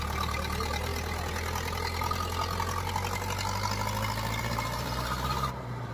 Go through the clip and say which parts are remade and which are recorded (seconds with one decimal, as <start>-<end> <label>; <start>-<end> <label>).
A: 0.0-0.9 remade; 0.9-4.4 recorded; 4.4-5.9 remade